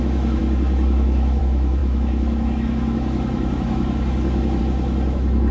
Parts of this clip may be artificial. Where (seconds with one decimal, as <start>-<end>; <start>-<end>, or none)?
0.0-5.5